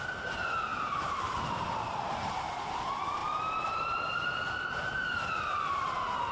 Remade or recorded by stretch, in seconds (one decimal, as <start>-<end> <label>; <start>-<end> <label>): 0.0-0.7 recorded; 0.7-2.3 remade; 2.3-6.3 recorded